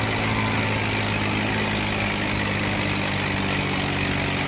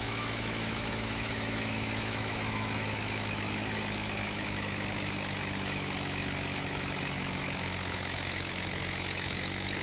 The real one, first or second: first